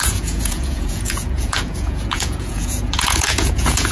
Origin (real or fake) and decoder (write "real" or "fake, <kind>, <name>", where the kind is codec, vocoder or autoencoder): fake, vocoder, Vocos